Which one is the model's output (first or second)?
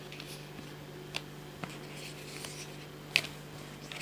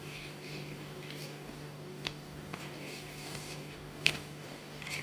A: second